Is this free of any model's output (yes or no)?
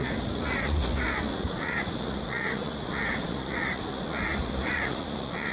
no